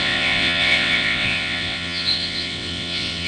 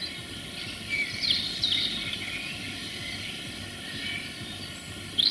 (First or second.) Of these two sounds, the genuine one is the second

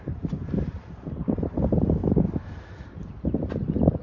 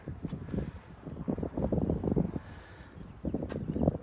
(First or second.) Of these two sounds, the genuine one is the second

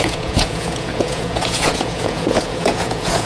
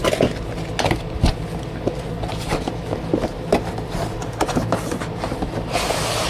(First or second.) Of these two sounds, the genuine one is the second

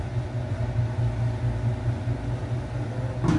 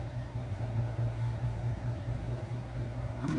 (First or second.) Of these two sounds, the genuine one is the first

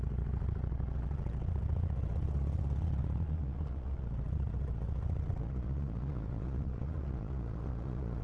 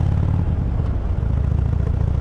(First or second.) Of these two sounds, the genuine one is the second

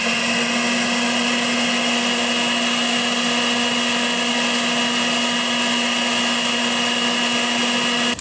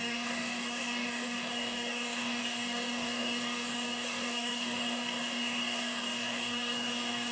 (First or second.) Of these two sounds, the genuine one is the first